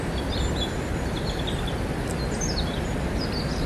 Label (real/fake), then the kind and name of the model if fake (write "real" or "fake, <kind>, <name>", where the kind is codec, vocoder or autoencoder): real